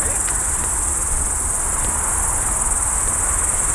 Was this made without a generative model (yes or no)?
yes